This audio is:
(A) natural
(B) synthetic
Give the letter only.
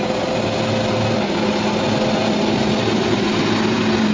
A